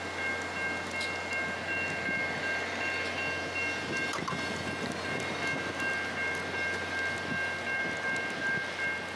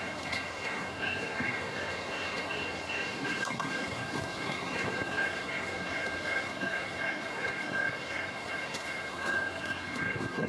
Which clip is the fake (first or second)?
second